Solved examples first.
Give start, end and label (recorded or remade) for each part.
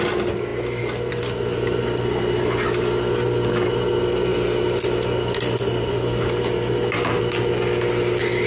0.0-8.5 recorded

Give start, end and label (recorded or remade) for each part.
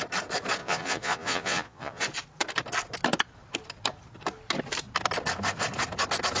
0.0-0.6 recorded; 0.6-2.0 remade; 2.0-6.4 recorded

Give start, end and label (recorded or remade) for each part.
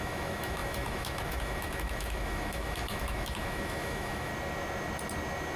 0.0-4.3 remade; 4.3-5.6 recorded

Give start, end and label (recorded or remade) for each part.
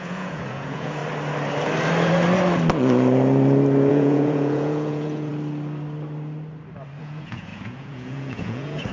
0.0-1.0 remade; 1.0-3.9 recorded; 3.9-5.3 remade; 5.3-7.0 recorded; 7.0-8.9 remade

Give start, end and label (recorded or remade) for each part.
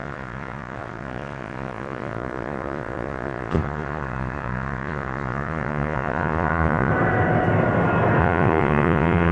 0.0-6.9 remade; 6.9-8.2 recorded; 8.2-9.3 remade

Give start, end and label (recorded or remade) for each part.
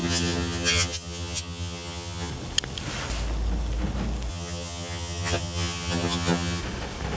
0.0-2.3 remade; 2.3-4.3 recorded; 4.3-6.6 remade; 6.6-7.2 recorded